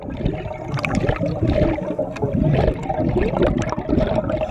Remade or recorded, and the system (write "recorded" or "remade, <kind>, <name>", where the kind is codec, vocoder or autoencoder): recorded